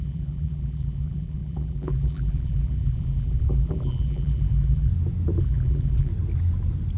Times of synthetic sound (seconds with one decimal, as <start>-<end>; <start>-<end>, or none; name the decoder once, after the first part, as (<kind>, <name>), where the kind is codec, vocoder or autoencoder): 0.0-4.9 (vocoder, BigVGAN v2); 5.4-6.1